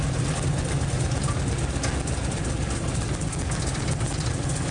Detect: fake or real real